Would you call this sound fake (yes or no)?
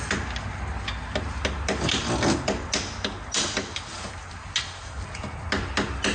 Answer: no